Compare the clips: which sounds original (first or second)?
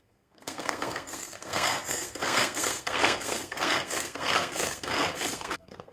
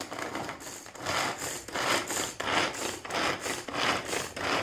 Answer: second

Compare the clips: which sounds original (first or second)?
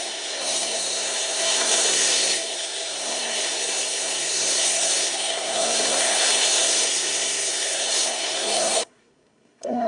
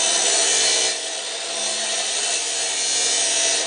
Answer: second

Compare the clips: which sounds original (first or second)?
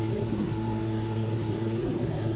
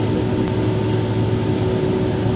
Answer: second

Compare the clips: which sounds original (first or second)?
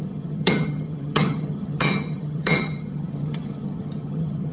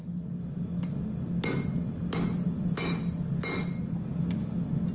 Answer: second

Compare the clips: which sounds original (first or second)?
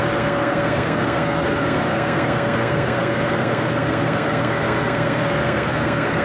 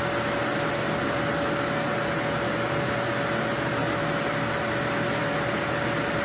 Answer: second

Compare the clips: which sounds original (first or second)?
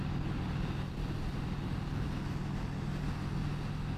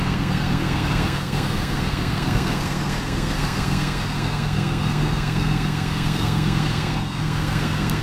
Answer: first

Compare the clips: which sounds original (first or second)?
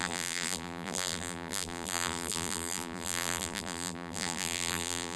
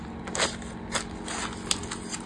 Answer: second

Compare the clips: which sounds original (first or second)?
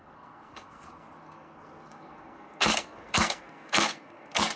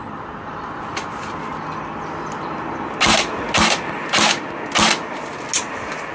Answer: second